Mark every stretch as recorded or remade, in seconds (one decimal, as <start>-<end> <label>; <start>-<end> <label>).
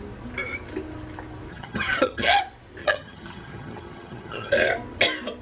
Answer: 0.0-1.5 recorded; 1.5-2.4 remade; 2.4-2.8 recorded; 2.8-4.5 remade; 4.5-5.4 recorded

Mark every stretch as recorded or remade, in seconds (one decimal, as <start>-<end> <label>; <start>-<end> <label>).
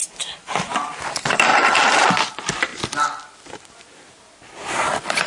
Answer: 0.0-5.3 recorded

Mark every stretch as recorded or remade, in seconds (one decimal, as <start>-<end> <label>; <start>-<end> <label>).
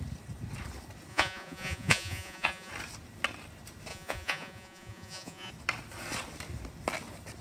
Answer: 0.0-1.1 recorded; 1.1-2.7 remade; 2.7-3.9 recorded; 3.9-5.5 remade; 5.5-7.4 recorded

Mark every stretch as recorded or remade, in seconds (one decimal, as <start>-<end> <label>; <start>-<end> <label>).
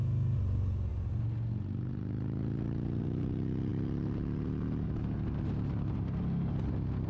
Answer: 0.0-7.1 recorded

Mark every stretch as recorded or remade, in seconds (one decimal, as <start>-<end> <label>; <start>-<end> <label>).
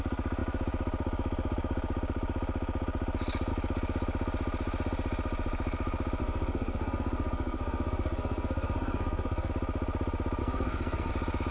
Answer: 0.0-6.2 recorded; 6.2-9.5 remade; 9.5-10.4 recorded; 10.4-11.1 remade; 11.1-11.5 recorded